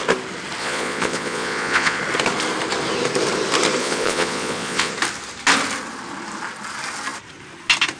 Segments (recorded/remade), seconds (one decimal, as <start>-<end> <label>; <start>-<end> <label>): 0.0-0.6 recorded; 0.6-2.0 remade; 2.0-3.8 recorded; 3.8-4.9 remade; 4.9-8.0 recorded